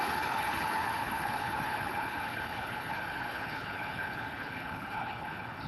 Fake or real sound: fake